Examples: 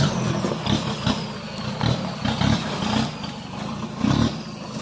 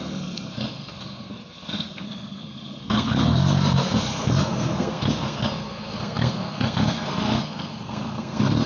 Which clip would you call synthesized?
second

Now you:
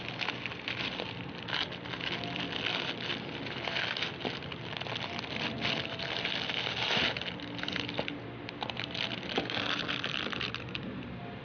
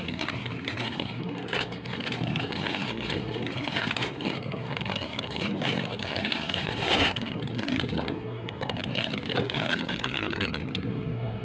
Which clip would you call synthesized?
second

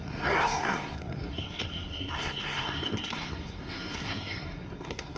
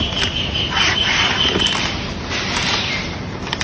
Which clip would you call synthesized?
first